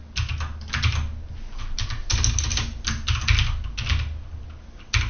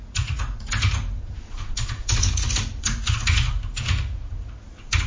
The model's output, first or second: second